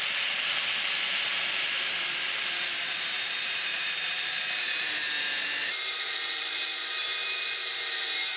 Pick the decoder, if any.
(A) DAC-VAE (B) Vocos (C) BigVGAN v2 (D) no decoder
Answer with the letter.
C